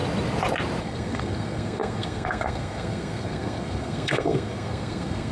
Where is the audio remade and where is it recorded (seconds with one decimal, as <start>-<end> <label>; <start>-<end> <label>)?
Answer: 0.0-0.8 recorded; 0.8-5.3 remade